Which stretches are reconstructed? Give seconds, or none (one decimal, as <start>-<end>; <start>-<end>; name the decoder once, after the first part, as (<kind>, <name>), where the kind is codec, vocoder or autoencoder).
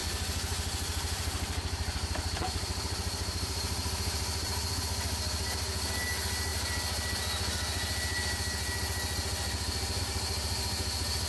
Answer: 0.0-4.8 (vocoder, BigVGAN v2)